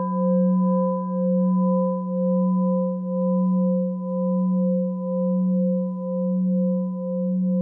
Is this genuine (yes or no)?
yes